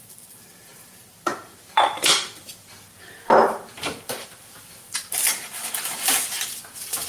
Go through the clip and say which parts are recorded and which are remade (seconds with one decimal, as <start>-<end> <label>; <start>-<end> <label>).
0.0-7.1 remade